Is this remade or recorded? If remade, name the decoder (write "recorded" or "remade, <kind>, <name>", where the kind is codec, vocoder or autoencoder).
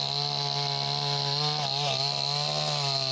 recorded